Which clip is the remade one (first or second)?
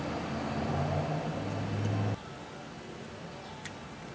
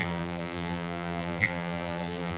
second